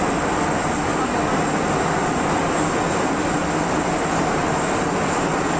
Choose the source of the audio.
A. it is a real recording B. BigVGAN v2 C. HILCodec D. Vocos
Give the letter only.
A